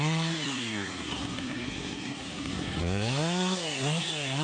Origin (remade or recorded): remade